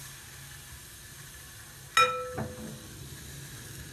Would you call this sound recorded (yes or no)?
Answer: yes